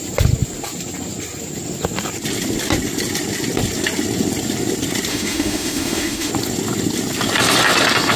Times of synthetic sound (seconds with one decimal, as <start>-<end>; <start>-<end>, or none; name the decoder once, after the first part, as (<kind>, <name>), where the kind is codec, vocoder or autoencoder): 5.1-6.3 (autoencoder, DAC-VAE)